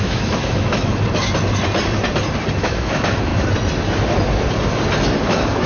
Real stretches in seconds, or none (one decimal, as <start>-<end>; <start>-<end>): 0.9-2.6; 3.3-5.2